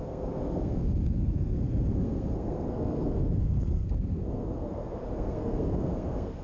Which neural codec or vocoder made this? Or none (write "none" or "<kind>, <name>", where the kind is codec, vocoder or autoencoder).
codec, SNAC